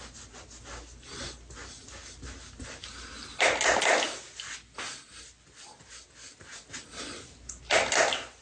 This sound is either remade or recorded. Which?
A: recorded